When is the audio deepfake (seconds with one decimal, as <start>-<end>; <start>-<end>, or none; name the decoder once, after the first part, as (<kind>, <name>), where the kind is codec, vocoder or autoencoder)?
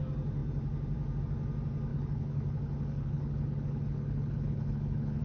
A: 1.9-5.2 (codec, HILCodec)